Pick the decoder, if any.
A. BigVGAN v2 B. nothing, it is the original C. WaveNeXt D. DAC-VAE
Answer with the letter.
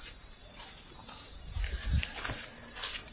A